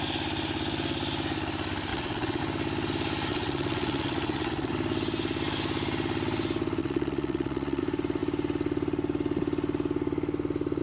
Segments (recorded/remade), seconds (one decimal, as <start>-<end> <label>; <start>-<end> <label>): 0.0-1.9 recorded; 1.9-2.4 remade; 2.4-3.3 recorded; 3.3-4.7 remade; 4.7-6.8 recorded; 6.8-7.8 remade; 7.8-10.8 recorded